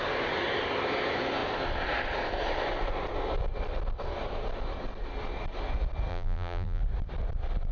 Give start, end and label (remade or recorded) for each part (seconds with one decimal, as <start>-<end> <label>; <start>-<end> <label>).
0.0-6.1 recorded; 6.1-6.8 remade; 6.8-7.7 recorded